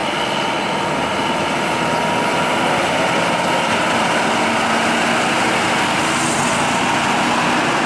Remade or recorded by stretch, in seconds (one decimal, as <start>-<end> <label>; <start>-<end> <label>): 0.0-7.9 recorded